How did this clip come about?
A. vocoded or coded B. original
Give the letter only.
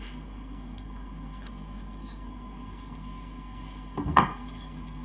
A